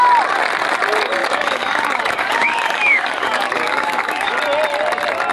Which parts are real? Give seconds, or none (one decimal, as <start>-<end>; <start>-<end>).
0.0-1.2; 4.4-5.3